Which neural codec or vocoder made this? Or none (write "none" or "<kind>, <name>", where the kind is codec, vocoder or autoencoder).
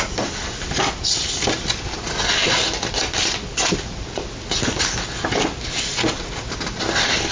none